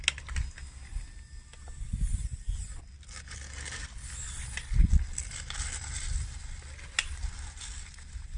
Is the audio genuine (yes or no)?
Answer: yes